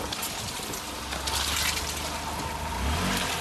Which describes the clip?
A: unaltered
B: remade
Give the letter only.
A